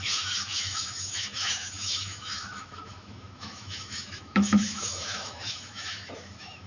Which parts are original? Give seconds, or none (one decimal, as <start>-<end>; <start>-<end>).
none

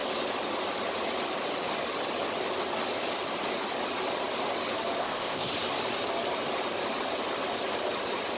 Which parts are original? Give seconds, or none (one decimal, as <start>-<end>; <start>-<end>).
0.0-5.0; 5.5-8.4